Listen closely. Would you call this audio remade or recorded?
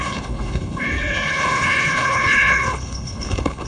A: remade